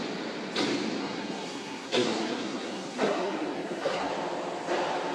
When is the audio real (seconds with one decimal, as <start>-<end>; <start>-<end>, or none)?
0.0-1.0; 4.1-5.1